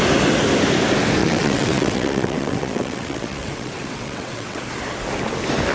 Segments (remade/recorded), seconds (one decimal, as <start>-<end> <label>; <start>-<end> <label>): 0.0-1.2 recorded; 1.2-4.6 remade; 4.6-5.7 recorded